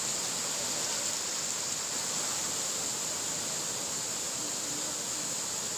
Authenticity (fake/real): real